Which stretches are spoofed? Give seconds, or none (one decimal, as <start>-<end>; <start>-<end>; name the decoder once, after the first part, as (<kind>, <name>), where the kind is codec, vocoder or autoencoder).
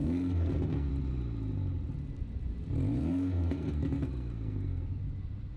0.0-0.9 (codec, SNAC); 3.0-5.0